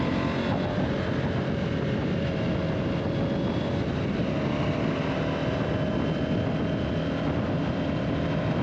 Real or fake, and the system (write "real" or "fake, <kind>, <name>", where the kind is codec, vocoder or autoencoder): real